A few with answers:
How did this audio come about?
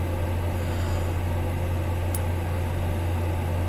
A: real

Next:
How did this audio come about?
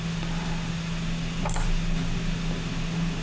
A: real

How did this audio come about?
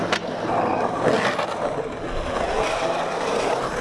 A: real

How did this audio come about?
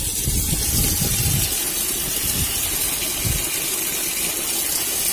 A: real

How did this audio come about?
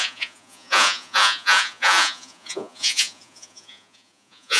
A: fake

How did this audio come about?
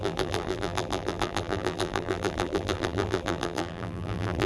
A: fake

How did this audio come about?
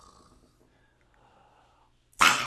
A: real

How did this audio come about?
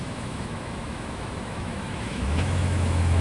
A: fake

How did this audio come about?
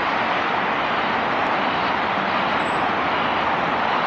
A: real